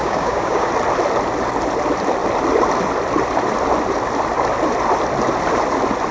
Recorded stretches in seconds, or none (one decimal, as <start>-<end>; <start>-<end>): 0.7-6.1